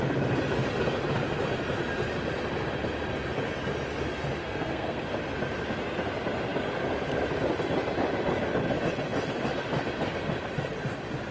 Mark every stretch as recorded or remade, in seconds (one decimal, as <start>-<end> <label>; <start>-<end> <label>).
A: 0.0-4.4 recorded; 4.4-5.0 remade; 5.0-11.3 recorded